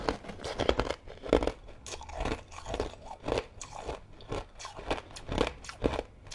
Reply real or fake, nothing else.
real